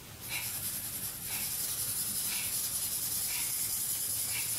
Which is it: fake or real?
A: real